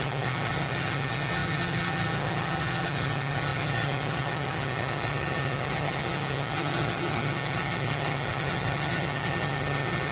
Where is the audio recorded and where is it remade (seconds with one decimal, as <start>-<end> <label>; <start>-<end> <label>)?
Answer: 0.0-10.1 remade